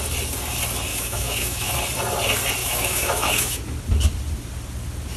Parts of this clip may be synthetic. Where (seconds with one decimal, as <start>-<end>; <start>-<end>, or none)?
0.9-1.7; 2.6-3.6